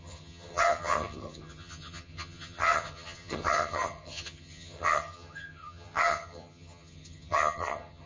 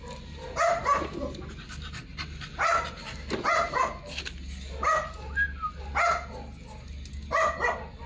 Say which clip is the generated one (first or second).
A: first